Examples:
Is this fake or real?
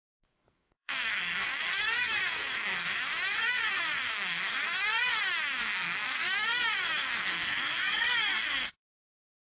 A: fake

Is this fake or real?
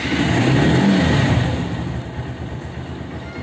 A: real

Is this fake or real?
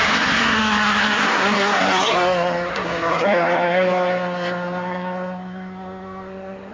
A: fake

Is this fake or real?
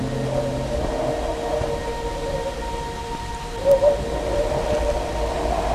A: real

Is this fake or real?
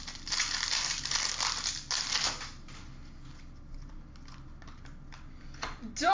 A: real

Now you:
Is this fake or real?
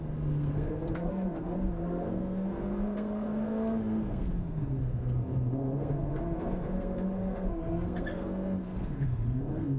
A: fake